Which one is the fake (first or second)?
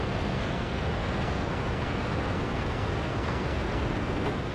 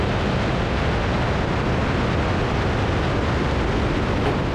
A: first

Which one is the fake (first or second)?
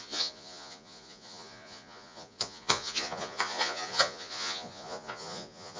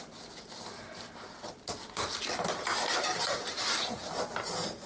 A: first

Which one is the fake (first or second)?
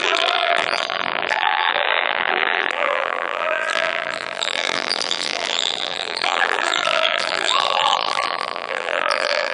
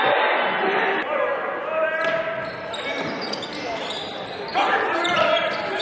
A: first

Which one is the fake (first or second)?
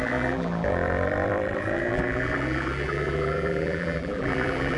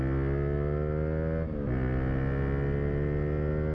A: first